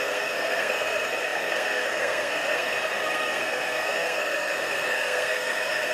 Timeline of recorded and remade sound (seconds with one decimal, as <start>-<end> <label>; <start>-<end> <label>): 0.0-5.9 remade